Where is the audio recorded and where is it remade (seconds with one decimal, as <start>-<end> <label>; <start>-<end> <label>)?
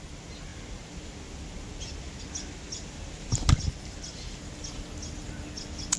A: 0.0-6.0 recorded